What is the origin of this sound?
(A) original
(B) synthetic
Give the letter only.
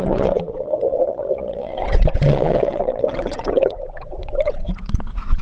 B